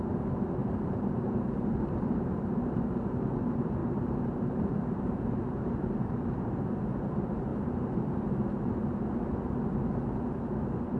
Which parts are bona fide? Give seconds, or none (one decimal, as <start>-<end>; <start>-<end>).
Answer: 0.0-0.6; 3.1-3.8; 6.7-7.5; 8.4-11.0